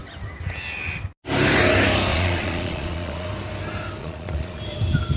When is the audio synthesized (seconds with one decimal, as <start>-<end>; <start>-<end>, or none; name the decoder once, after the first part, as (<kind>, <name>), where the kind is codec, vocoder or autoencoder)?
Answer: 2.1-3.3 (vocoder, Vocos); 4.0-4.6